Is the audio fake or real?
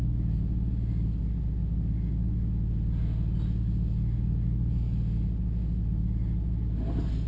real